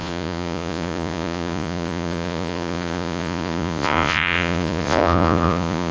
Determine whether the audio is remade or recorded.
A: remade